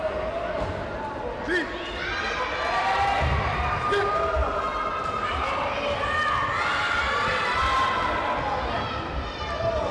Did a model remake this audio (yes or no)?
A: no